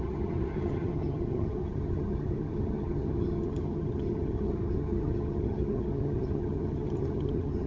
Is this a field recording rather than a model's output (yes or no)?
no